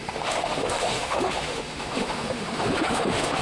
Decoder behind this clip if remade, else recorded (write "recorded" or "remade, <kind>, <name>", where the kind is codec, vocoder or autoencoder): remade, autoencoder, DAC-VAE